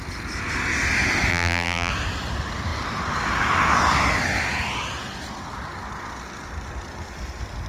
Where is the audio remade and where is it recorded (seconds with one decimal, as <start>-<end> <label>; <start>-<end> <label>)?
0.0-1.3 recorded; 1.3-1.9 remade; 1.9-7.7 recorded